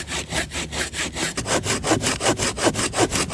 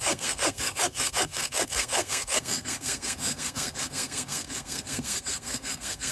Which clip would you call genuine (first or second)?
first